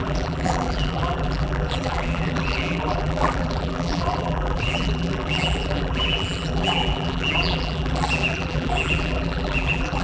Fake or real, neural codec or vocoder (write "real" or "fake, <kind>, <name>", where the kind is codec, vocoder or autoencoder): fake, vocoder, BigVGAN v2